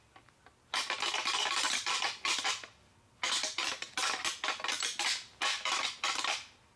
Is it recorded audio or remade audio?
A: recorded